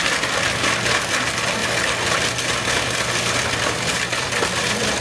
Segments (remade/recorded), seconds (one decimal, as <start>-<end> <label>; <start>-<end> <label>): 0.0-5.0 recorded

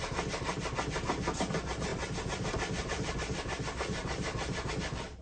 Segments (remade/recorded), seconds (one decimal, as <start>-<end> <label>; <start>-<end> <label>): 0.0-1.9 recorded; 1.9-4.7 remade; 4.7-5.2 recorded

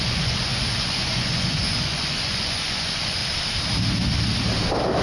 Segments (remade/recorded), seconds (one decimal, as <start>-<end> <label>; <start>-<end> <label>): 0.0-3.2 remade; 3.2-5.0 recorded

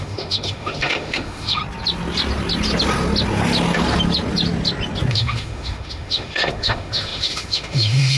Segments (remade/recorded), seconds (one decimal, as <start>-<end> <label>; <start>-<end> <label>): 0.0-1.6 remade; 1.6-5.1 recorded; 5.1-8.2 remade

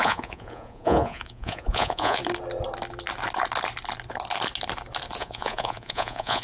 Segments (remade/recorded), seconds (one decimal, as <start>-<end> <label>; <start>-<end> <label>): 0.0-2.2 remade; 2.2-5.2 recorded; 5.2-6.4 remade